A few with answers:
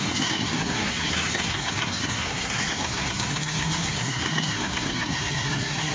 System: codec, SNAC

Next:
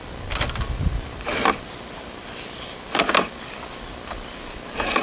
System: none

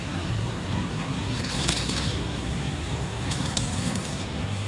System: codec, SNAC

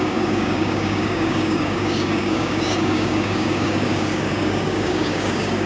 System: codec, DAC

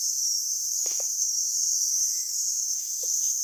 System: autoencoder, DAC-VAE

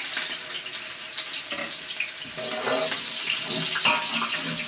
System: none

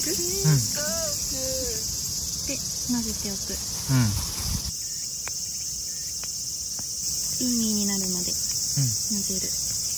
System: none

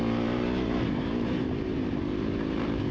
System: vocoder, BigVGAN v2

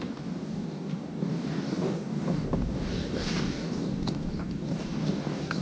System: codec, DAC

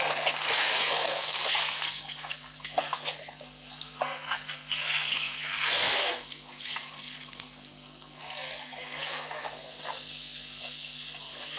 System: codec, SNAC